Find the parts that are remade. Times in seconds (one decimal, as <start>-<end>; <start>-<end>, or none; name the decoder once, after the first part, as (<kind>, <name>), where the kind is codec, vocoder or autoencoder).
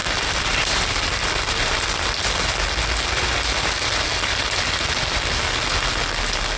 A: 0.0-2.0 (vocoder, BigVGAN v2)